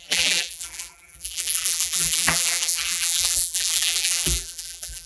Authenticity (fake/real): fake